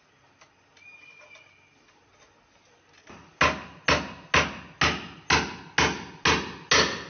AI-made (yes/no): no